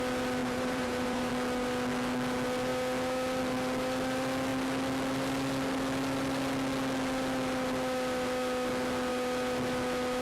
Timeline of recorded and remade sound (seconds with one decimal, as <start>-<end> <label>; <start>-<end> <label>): 0.0-0.4 recorded; 0.4-1.3 remade; 1.3-10.2 recorded